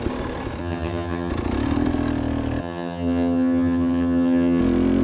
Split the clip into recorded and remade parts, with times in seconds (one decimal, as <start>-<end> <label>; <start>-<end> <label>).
0.0-0.6 recorded; 0.6-1.3 remade; 1.3-2.6 recorded; 2.6-4.6 remade; 4.6-5.0 recorded